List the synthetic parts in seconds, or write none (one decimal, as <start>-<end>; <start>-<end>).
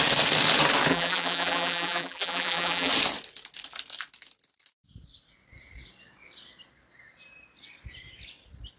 0.9-2.9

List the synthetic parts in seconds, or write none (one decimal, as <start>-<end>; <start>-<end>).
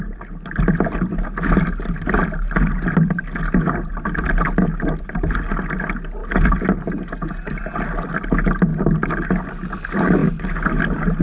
none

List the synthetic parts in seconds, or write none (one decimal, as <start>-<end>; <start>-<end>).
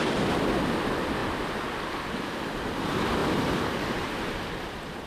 3.2-5.1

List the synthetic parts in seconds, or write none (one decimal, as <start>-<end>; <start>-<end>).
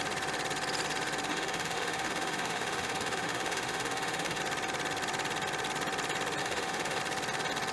1.3-4.4; 6.4-7.0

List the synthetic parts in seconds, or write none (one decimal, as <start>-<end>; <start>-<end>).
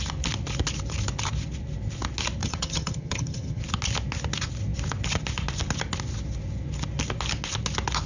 2.4-3.6